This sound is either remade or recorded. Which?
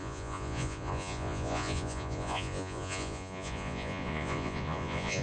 remade